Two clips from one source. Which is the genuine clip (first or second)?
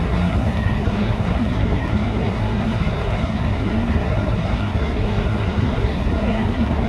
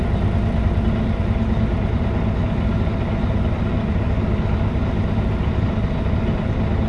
second